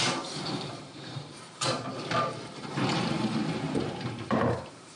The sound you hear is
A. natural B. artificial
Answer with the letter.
B